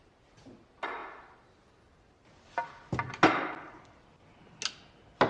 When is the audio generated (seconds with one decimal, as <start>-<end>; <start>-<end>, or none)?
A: none